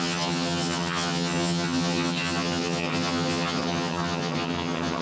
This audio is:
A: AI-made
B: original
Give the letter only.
A